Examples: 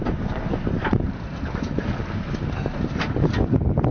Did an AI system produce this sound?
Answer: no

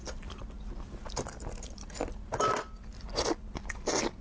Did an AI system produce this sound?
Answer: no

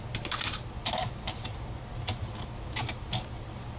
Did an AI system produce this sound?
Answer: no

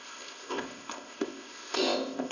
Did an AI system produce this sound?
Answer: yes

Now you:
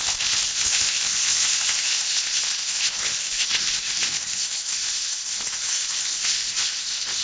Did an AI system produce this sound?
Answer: yes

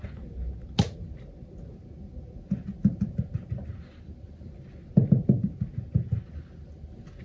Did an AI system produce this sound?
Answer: no